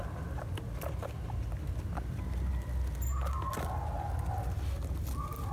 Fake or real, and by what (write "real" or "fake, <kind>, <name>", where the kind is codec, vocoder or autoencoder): real